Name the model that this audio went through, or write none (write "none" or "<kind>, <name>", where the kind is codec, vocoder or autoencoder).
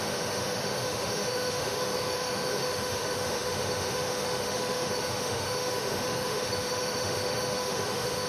autoencoder, DAC-VAE